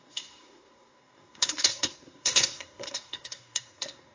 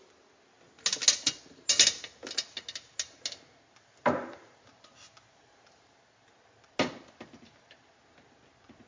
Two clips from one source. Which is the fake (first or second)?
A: first